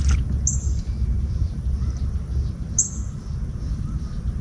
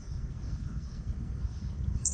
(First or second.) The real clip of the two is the first